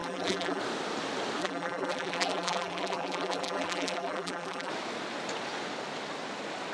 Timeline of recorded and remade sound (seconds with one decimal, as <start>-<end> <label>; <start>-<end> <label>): 0.0-0.6 remade; 0.6-1.4 recorded; 1.4-4.7 remade; 4.7-6.7 recorded